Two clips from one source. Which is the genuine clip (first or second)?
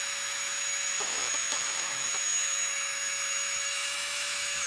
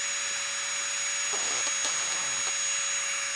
second